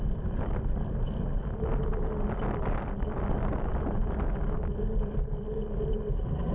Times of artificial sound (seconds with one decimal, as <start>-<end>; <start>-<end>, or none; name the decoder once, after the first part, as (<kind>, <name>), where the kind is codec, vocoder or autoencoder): none